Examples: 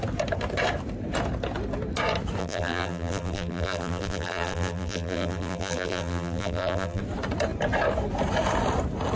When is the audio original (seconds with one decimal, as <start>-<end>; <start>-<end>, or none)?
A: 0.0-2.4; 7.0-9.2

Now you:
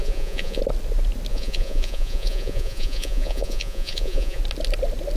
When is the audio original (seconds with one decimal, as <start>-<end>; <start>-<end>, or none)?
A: 0.6-1.3; 4.4-5.2

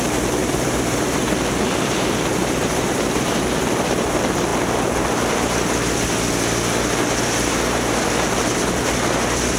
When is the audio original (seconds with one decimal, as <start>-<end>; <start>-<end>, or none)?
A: 0.0-0.4; 3.4-9.6